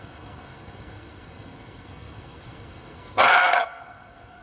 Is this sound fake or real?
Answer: fake